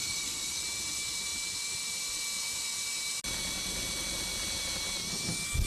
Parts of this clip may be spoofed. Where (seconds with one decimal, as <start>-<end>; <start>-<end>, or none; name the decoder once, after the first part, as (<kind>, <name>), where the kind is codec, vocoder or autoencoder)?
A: 0.0-0.6 (codec, SNAC)